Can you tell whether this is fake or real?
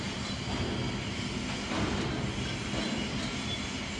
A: real